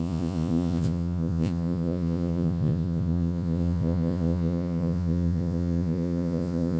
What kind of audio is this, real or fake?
fake